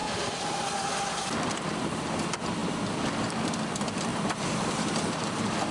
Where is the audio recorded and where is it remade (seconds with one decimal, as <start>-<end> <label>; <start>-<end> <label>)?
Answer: 0.0-1.4 recorded; 1.4-2.6 remade; 2.6-3.1 recorded; 3.1-5.7 remade